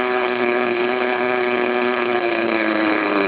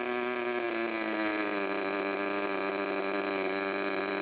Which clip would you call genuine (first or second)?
second